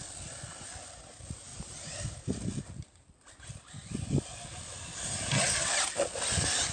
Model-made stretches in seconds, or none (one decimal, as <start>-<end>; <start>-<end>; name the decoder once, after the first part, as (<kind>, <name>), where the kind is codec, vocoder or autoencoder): none